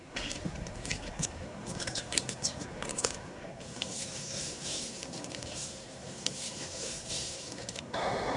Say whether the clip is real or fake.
fake